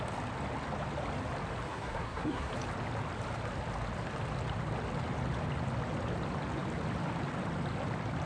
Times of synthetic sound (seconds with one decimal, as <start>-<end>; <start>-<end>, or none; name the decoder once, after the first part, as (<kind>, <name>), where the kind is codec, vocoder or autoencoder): 1.7-2.5 (codec, SNAC)

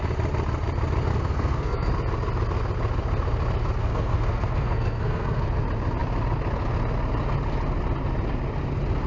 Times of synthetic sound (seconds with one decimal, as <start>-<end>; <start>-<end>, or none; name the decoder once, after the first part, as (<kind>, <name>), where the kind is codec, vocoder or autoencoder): 1.1-1.9 (codec, SNAC); 3.8-5.4

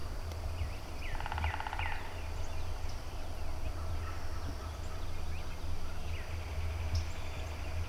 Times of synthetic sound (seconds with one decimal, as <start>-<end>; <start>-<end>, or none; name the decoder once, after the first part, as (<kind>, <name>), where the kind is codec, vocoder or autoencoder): 0.0-1.5 (vocoder, BigVGAN v2)

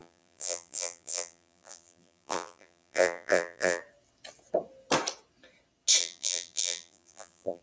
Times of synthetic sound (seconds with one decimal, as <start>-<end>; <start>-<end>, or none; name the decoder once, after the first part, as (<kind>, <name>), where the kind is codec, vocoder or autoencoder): 0.0-3.8 (vocoder, BigVGAN v2); 6.0-7.6

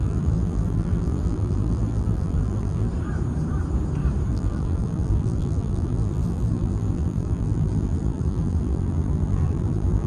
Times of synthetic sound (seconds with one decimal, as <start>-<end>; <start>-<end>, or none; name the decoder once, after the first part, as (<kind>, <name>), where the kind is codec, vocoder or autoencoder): 0.0-2.9 (vocoder, BigVGAN v2); 4.3-10.1